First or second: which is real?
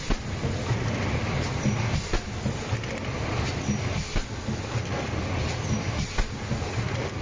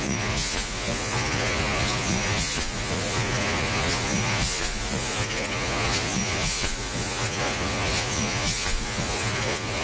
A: first